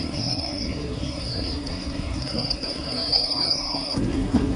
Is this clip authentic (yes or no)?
no